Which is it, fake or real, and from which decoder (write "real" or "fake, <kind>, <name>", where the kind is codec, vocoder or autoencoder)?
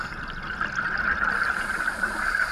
real